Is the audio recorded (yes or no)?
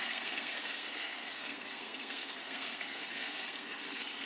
no